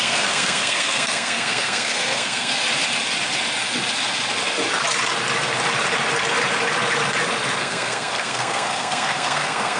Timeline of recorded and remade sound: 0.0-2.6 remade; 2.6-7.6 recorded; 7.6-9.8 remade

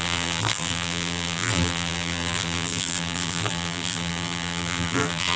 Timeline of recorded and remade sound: 0.0-5.4 remade